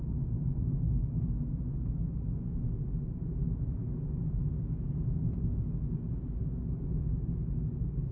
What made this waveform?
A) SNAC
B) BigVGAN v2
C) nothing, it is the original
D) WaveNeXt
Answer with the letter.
C